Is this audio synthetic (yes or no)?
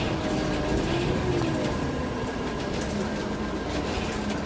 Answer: no